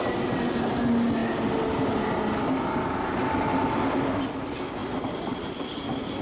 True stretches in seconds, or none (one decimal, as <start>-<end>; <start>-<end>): 0.0-6.2